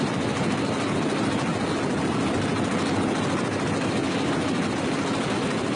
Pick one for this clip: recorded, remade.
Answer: recorded